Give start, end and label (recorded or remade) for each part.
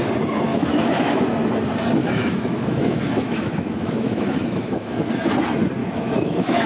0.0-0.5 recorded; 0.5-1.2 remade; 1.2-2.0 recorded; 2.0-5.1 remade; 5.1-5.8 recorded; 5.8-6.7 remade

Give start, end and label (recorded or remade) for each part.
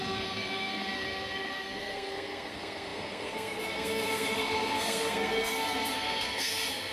0.0-6.9 remade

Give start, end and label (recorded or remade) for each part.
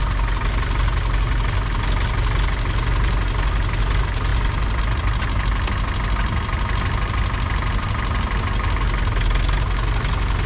0.0-4.3 recorded; 4.3-4.8 remade; 4.8-10.5 recorded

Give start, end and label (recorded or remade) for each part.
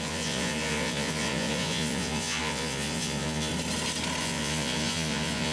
0.0-3.5 remade; 3.5-4.2 recorded; 4.2-5.5 remade